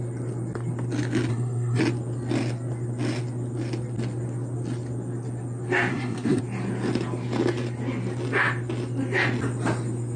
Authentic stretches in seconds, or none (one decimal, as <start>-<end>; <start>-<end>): 0.0-1.3; 1.8-5.9; 6.4-10.2